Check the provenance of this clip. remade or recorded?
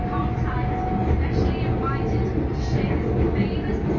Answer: recorded